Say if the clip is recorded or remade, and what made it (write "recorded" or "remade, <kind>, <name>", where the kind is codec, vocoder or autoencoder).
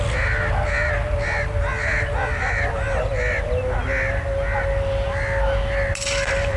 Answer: recorded